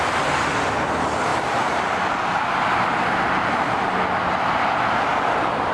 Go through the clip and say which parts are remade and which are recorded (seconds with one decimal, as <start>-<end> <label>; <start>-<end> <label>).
0.0-1.3 recorded; 1.3-2.0 remade; 2.0-5.7 recorded